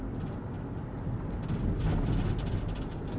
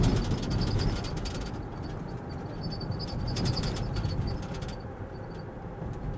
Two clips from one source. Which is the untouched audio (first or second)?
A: first